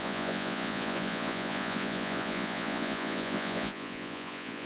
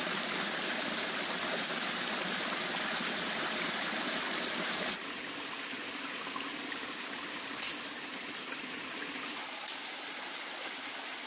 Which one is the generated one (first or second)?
first